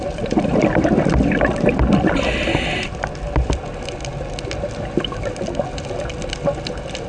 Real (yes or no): yes